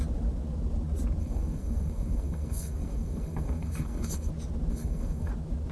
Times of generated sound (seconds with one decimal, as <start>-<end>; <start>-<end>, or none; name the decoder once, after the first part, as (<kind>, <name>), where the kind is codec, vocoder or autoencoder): 1.2-4.3 (codec, SNAC); 4.7-5.3